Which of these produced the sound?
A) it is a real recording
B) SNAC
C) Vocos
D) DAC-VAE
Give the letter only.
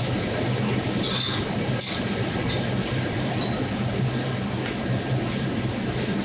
A